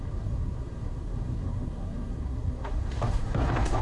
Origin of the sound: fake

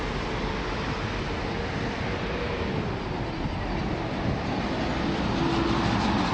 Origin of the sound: real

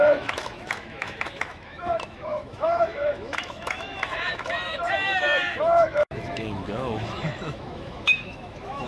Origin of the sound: fake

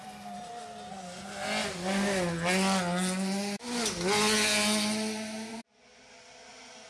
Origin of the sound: real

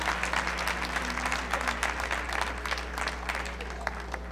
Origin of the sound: real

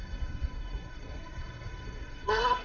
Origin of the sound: fake